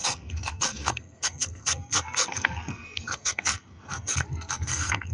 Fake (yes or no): yes